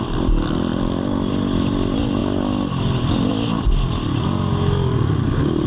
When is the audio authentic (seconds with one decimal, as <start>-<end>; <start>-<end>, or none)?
0.0-0.7; 1.3-2.2; 3.3-5.7